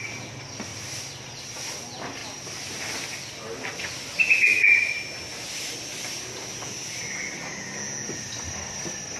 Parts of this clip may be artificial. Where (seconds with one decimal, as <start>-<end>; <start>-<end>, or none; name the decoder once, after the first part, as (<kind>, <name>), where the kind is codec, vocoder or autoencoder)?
none